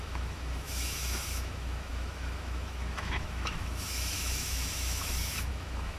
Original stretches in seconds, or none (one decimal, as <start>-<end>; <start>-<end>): none